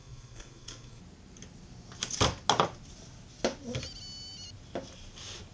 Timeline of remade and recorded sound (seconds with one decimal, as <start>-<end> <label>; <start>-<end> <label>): 0.0-1.0 remade; 1.0-5.5 recorded